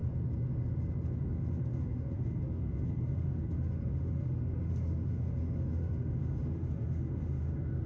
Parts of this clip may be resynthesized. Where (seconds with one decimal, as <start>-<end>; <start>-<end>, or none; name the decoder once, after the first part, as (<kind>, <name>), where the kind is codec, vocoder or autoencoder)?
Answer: 1.1-7.9 (autoencoder, DAC-VAE)

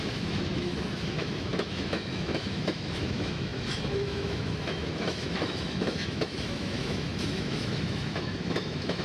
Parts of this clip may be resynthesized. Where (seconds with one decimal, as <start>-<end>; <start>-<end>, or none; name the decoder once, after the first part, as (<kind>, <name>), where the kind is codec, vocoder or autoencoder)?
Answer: 0.0-9.0 (autoencoder, DAC-VAE)

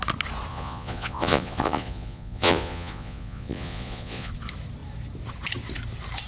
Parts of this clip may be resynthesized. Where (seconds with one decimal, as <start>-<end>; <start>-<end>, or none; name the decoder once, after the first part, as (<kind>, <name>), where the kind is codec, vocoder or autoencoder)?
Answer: 0.5-4.3 (vocoder, Vocos)

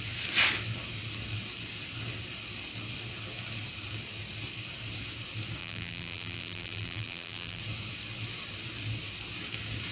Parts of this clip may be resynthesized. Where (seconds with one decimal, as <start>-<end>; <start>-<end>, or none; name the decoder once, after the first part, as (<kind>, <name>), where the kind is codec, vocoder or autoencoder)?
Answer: 5.6-7.6 (vocoder, BigVGAN v2)

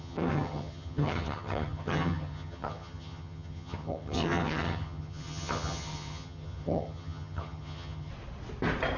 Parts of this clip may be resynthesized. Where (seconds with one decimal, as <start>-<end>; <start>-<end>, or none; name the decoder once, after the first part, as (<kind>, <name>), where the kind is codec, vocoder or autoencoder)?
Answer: 0.0-8.1 (vocoder, HiFi-GAN)

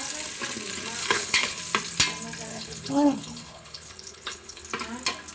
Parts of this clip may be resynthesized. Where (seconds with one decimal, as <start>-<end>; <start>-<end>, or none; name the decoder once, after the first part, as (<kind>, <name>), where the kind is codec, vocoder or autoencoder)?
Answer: 1.0-1.6 (codec, HILCodec); 2.5-4.6

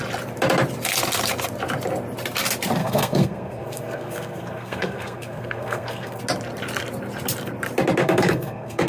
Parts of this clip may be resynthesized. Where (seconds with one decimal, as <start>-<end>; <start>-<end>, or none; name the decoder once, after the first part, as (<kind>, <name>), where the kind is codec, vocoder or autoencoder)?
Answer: 2.8-6.2 (codec, SNAC); 8.0-8.9

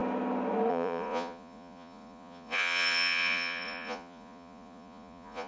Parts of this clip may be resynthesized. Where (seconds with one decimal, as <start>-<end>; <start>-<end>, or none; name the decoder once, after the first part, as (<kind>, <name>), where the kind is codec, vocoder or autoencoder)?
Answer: 0.7-5.5 (vocoder, Vocos)